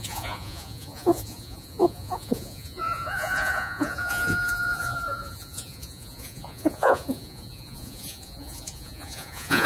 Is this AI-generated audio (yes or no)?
yes